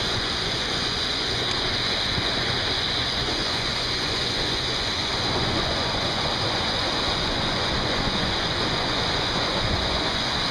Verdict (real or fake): fake